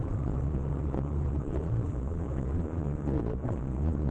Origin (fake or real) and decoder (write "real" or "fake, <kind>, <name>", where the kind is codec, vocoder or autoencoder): fake, vocoder, Vocos